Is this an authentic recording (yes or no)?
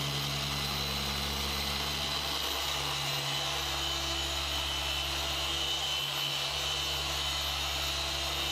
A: yes